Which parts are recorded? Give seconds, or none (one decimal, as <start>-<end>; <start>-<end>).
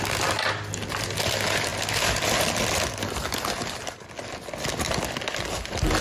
0.0-6.0